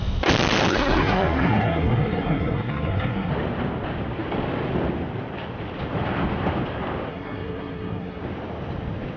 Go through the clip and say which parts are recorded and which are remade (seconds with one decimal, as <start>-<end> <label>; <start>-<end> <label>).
0.0-0.7 recorded; 0.7-3.3 remade; 3.3-7.1 recorded; 7.1-8.2 remade; 8.2-9.2 recorded